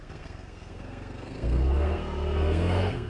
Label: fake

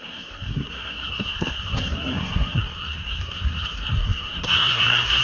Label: fake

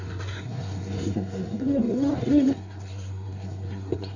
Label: fake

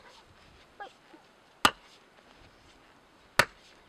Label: real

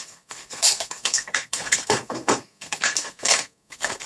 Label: fake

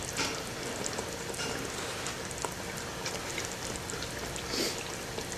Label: real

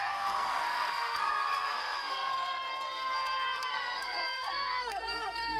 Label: fake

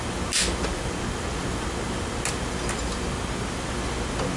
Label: real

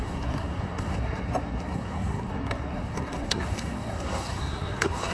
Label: fake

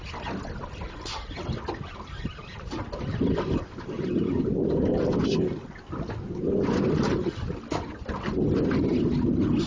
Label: real